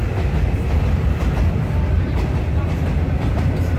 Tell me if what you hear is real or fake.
real